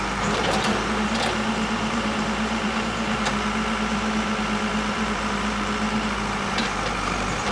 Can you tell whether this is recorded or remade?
remade